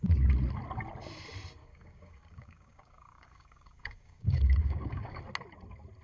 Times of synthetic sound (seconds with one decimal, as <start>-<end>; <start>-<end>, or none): 1.6-5.2